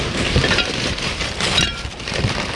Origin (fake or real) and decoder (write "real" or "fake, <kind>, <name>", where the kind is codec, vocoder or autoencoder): fake, vocoder, BigVGAN v2